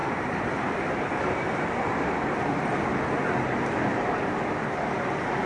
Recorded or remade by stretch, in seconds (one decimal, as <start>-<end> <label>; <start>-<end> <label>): 0.0-1.6 remade; 1.6-5.5 recorded